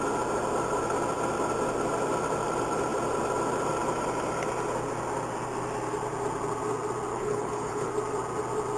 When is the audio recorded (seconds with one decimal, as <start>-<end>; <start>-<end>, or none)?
0.0-7.1; 7.9-8.8